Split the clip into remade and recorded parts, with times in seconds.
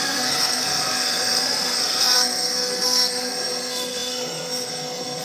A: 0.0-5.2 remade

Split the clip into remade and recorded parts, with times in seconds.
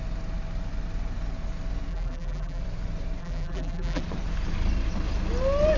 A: 0.0-1.9 recorded; 1.9-2.6 remade; 2.6-3.2 recorded; 3.2-4.0 remade; 4.0-5.8 recorded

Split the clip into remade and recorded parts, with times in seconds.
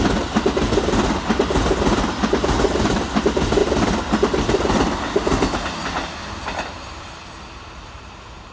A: 0.0-8.5 recorded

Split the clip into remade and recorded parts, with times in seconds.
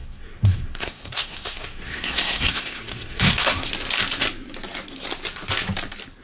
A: 0.0-3.7 remade; 3.7-6.2 recorded